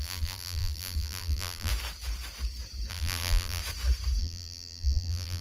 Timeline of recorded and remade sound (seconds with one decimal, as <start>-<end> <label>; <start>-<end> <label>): 0.0-1.7 remade; 1.7-2.9 recorded; 2.9-3.6 remade; 3.6-4.2 recorded; 4.2-5.4 remade